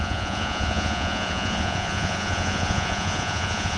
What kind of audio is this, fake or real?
fake